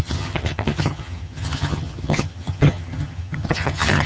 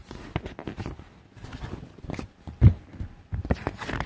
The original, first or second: second